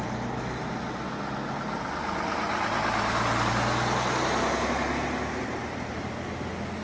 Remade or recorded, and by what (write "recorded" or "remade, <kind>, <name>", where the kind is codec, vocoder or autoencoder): recorded